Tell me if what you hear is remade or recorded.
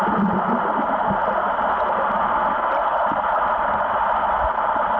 recorded